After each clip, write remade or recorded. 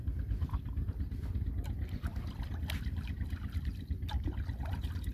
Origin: recorded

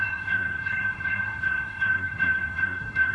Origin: remade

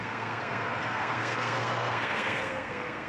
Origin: remade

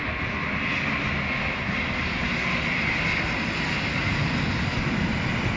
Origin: recorded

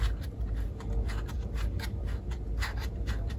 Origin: recorded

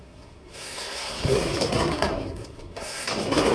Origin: remade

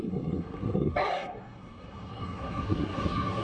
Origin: remade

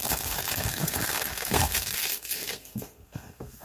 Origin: remade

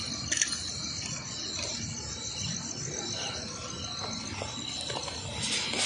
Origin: recorded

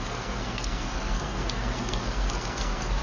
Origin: remade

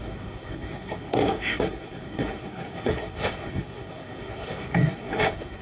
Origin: remade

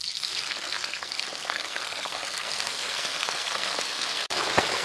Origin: remade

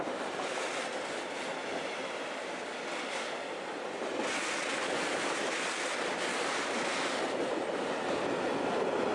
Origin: recorded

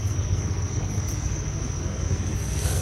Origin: remade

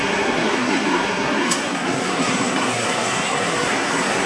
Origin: remade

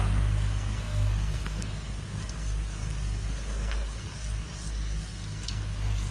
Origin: remade